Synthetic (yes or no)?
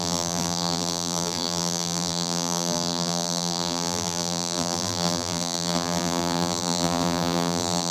yes